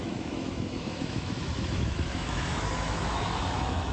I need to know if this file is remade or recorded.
remade